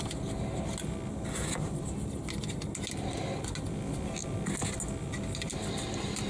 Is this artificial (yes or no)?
no